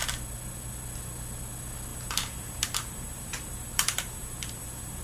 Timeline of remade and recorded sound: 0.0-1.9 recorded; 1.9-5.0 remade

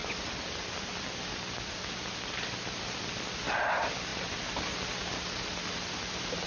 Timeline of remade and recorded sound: 0.0-6.5 recorded

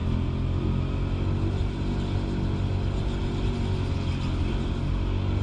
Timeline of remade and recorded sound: 0.0-5.4 recorded

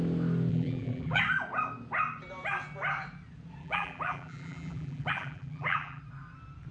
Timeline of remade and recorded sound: 0.0-0.5 recorded; 0.5-1.2 remade; 1.2-3.6 recorded; 3.6-6.0 remade; 6.0-6.7 recorded

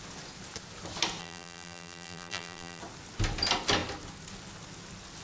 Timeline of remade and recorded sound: 0.0-1.2 recorded; 1.2-2.8 remade; 2.8-5.2 recorded

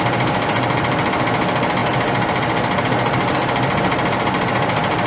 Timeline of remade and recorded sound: 0.0-1.8 recorded; 1.8-5.1 remade

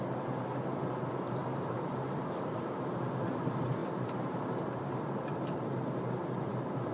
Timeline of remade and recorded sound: 0.0-1.4 recorded; 1.4-2.7 remade; 2.7-3.8 recorded; 3.8-6.9 remade

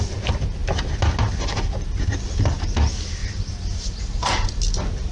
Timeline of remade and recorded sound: 0.0-3.2 recorded; 3.2-4.5 remade; 4.5-5.1 recorded